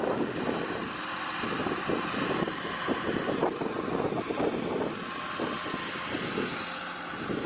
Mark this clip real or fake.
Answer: real